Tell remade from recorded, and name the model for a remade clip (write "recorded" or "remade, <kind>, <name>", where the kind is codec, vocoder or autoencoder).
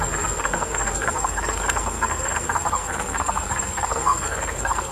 remade, codec, SNAC